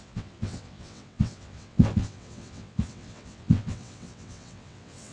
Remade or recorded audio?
remade